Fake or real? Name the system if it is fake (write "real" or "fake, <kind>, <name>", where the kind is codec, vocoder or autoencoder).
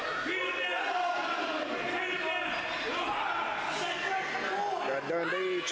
real